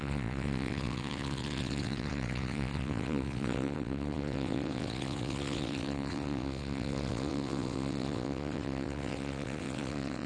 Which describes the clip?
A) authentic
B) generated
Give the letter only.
B